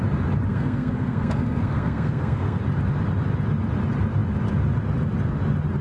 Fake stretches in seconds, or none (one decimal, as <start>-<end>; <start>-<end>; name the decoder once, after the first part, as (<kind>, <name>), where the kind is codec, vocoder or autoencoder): 0.5-2.6 (codec, SNAC)